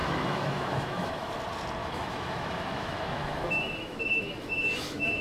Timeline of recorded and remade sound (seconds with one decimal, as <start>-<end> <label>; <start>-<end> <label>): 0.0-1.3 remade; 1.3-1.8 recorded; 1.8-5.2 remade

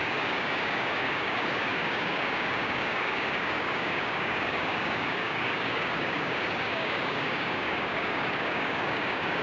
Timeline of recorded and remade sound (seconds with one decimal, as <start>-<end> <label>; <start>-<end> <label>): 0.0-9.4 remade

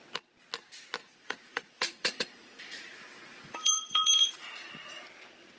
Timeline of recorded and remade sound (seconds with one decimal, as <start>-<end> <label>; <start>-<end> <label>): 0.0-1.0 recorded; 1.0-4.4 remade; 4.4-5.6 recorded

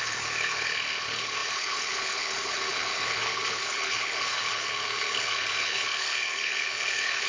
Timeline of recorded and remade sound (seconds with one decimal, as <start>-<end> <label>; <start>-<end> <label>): 0.0-7.3 remade